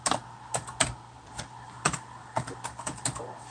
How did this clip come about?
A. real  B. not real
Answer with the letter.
A